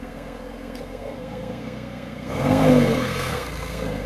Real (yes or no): no